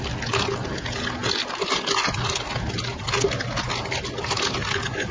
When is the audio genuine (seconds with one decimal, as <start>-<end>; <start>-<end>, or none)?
0.0-5.1